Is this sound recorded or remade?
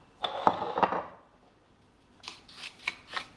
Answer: recorded